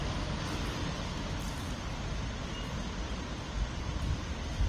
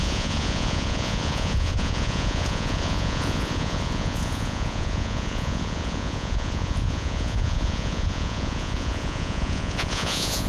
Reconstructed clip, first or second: second